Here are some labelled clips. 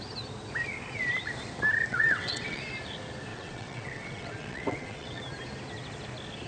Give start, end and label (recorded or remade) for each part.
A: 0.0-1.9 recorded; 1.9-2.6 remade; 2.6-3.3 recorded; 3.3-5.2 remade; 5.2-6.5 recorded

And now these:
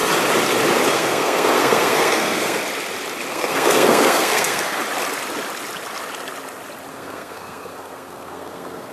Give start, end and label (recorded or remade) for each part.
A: 0.0-0.9 recorded; 0.9-2.6 remade; 2.6-3.3 recorded; 3.3-4.8 remade; 4.8-6.9 recorded; 6.9-8.9 remade

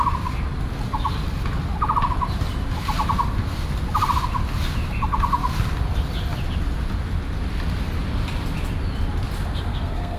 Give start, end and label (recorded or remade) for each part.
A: 0.0-9.7 recorded; 9.7-10.2 remade

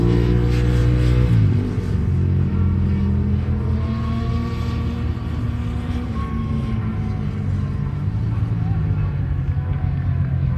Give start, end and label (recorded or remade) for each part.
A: 0.0-10.6 recorded

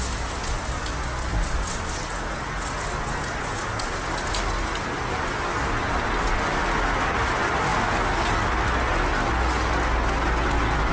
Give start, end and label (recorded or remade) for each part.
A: 0.0-10.9 recorded